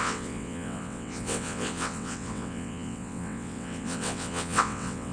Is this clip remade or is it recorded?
remade